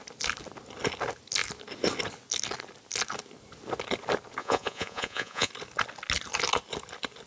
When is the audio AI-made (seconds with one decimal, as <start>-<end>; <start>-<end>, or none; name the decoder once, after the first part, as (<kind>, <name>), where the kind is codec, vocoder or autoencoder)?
4.4-5.5 (vocoder, Vocos)